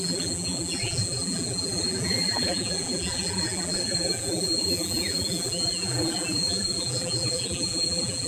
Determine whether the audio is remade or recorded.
remade